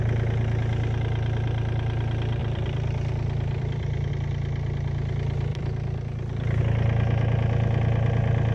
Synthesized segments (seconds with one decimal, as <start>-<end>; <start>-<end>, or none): 2.4-4.1; 5.5-6.6